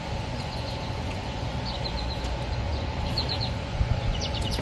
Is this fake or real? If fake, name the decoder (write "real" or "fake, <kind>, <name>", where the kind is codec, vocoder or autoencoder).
fake, vocoder, Vocos